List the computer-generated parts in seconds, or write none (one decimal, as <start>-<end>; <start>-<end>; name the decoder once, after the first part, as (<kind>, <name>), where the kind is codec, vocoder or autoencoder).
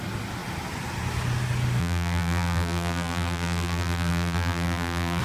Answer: 1.8-5.2 (vocoder, BigVGAN v2)